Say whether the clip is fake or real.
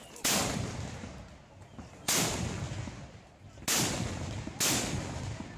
real